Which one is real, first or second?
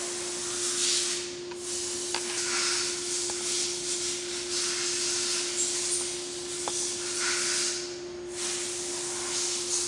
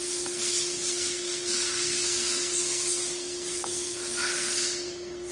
first